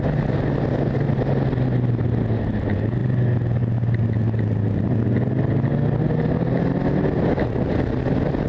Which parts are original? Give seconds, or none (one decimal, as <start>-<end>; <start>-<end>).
0.0-8.5